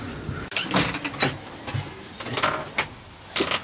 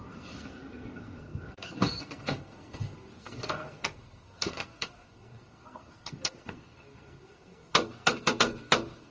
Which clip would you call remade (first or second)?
second